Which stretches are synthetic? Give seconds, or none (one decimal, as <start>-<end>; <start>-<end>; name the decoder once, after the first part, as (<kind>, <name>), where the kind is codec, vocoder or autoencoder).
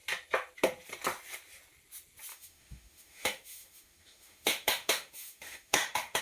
2.3-6.2 (autoencoder, DAC-VAE)